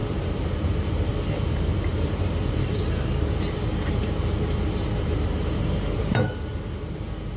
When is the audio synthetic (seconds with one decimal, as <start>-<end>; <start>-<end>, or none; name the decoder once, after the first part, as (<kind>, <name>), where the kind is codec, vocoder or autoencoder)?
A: 0.0-1.1 (vocoder, BigVGAN v2); 1.9-6.3